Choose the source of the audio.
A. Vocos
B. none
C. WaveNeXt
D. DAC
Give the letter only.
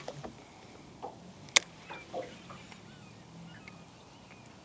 B